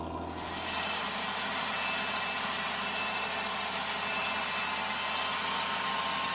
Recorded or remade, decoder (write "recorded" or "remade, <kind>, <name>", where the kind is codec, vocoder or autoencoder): recorded